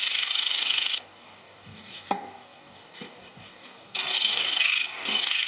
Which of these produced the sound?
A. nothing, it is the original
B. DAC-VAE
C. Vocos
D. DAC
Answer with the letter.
D